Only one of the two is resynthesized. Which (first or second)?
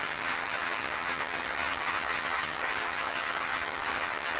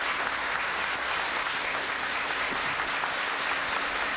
first